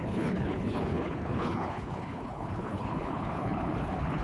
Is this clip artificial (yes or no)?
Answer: yes